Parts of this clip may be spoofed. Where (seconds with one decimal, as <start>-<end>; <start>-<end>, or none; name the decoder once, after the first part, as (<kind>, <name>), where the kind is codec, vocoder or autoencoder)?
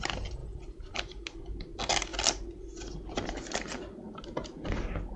none